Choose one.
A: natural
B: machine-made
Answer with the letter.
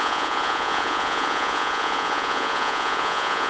B